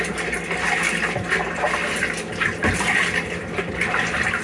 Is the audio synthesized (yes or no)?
no